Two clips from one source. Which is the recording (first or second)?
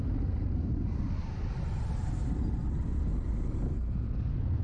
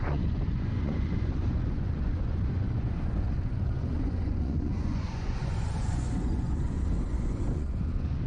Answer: first